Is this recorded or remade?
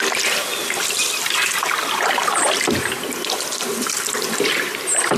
recorded